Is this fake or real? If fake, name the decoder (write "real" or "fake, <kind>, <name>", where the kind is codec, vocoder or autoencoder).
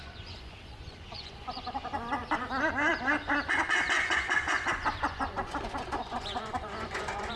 fake, vocoder, Vocos